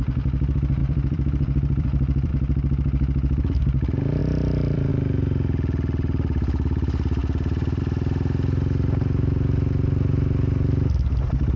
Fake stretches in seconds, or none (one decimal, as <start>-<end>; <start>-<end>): 0.8-2.3; 4.2-4.9; 7.2-7.8